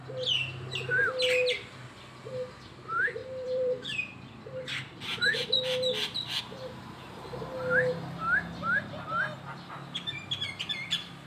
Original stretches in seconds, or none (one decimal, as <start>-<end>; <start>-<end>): 0.0-3.2; 6.4-11.3

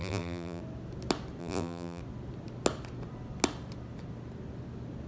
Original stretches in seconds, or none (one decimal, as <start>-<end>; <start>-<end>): 0.6-1.4; 2.0-5.1